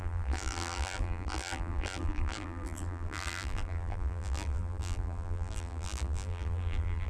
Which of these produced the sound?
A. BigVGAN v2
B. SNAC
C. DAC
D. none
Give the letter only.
A